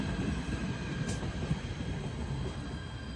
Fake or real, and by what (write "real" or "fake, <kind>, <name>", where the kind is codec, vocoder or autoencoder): real